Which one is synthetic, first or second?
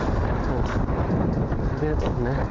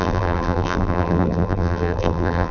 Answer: second